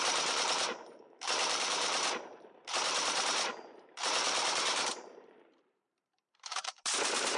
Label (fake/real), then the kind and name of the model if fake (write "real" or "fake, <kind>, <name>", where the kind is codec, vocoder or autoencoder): fake, vocoder, BigVGAN v2